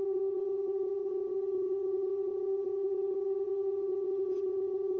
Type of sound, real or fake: fake